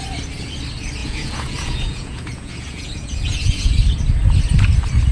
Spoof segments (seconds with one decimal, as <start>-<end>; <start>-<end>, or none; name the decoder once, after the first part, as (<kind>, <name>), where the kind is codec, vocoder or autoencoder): 1.0-3.7 (vocoder, Vocos)